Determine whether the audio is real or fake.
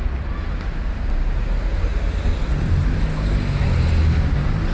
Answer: real